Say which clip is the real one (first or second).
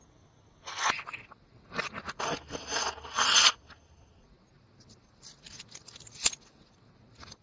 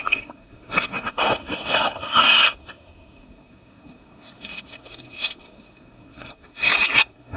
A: first